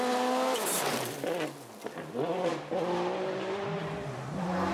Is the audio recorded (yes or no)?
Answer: yes